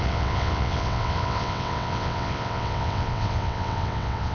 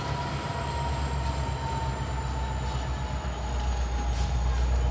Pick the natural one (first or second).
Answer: second